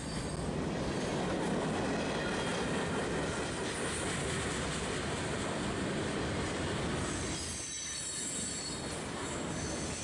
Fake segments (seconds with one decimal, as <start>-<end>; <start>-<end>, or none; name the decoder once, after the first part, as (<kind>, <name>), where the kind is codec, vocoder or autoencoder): 2.5-3.0 (vocoder, BigVGAN v2)